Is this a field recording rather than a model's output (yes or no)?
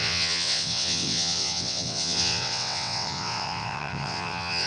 no